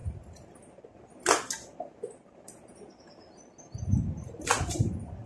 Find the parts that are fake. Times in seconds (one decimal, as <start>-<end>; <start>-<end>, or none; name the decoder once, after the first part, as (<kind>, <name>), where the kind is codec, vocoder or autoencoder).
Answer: none